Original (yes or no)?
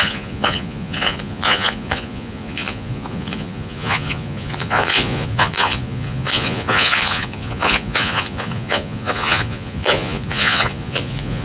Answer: no